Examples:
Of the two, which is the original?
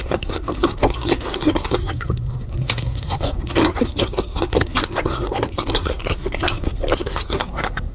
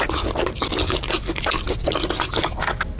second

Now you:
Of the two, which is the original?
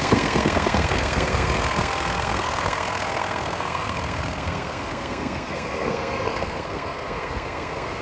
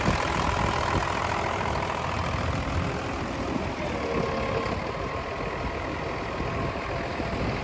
second